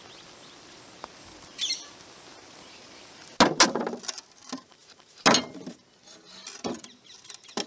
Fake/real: real